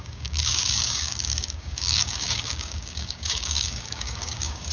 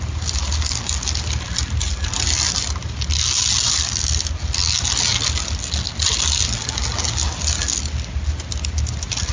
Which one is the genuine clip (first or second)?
second